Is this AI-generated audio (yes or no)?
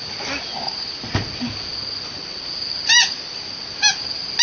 no